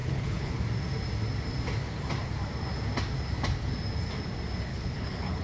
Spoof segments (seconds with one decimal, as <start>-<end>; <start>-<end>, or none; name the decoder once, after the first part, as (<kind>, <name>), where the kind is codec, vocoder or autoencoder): 0.0-0.6 (codec, HILCodec); 4.7-5.4